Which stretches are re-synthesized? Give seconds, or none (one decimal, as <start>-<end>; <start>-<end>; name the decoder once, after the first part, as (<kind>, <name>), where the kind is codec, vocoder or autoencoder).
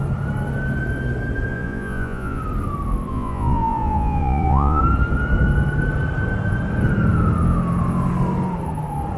1.5-2.4 (vocoder, Vocos); 3.1-4.8